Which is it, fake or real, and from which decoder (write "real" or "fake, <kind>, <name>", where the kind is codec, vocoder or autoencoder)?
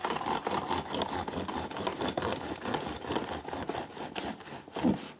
real